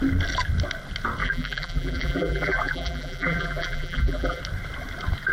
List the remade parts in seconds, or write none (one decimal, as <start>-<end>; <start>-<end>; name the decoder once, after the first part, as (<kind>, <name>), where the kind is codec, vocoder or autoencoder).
1.2-4.4 (vocoder, BigVGAN v2)